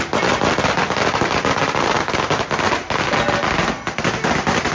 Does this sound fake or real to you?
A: real